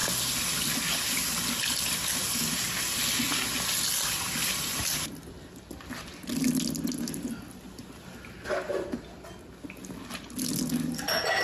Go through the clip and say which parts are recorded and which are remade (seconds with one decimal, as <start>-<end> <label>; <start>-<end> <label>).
0.0-11.4 recorded